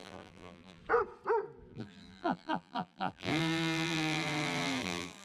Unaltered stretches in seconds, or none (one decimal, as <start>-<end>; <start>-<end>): 0.8-1.7